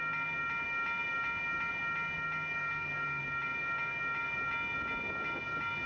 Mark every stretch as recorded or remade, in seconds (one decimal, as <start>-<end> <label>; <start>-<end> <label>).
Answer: 0.0-2.6 recorded; 2.6-3.2 remade; 3.2-5.9 recorded